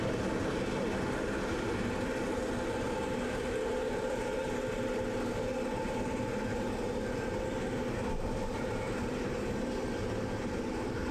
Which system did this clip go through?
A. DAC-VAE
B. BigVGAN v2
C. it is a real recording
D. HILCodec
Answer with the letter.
C